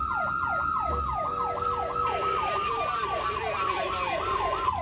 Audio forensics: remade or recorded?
recorded